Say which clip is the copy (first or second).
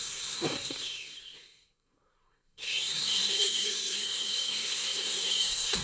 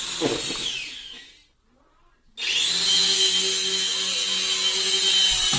first